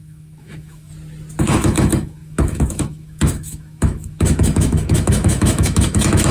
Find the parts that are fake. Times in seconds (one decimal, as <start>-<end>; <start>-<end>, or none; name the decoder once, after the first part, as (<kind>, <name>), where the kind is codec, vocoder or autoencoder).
0.0-0.9 (autoencoder, DAC-VAE); 1.4-6.3

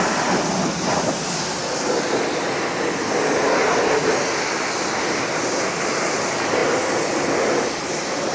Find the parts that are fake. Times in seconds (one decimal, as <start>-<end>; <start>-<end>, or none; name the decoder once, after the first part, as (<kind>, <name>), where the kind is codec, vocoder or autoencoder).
none